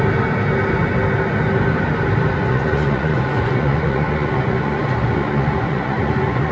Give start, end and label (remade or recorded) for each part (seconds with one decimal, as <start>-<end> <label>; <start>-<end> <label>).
0.0-2.4 recorded; 2.4-6.5 remade

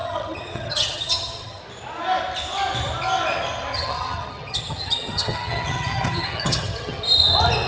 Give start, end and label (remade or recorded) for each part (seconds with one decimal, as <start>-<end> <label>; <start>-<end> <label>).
0.0-1.6 remade; 1.6-3.7 recorded; 3.7-7.0 remade; 7.0-7.7 recorded